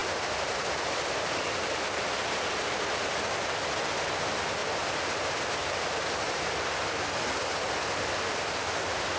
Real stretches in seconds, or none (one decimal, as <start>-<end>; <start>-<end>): 2.1-4.6; 6.6-9.2